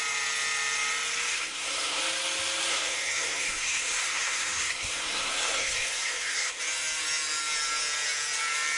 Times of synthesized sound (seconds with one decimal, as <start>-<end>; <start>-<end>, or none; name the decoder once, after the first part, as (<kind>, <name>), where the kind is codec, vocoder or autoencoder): 1.3-2.0 (codec, SNAC); 2.7-6.6